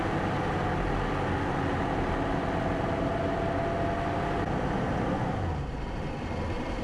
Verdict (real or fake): real